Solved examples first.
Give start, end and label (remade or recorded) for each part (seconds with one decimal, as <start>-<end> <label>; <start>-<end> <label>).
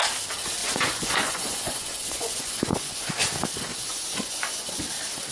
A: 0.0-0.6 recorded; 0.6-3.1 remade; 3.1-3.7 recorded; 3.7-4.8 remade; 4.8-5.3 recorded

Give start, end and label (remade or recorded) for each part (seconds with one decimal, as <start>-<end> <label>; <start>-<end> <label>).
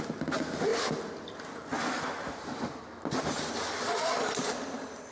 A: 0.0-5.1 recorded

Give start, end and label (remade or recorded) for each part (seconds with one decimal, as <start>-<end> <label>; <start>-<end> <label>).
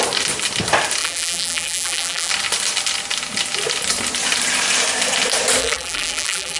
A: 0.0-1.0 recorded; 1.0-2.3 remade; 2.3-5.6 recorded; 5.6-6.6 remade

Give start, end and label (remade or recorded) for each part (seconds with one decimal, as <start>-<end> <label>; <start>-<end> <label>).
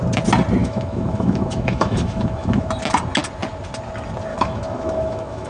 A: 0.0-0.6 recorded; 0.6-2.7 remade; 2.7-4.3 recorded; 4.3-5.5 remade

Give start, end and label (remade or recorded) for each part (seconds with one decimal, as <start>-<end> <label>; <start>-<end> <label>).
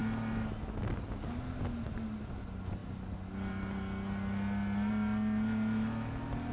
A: 0.0-6.5 recorded